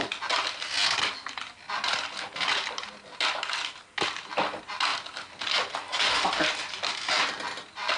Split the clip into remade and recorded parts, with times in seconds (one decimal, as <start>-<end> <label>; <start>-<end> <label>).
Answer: 0.0-8.0 recorded